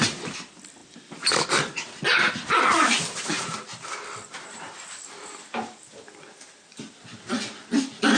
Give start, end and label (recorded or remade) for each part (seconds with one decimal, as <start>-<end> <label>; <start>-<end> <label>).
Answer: 0.0-8.2 recorded